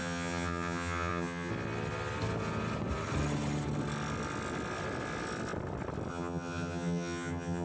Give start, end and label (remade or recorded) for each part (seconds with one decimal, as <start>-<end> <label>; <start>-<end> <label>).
0.0-1.5 remade; 1.5-6.1 recorded; 6.1-7.6 remade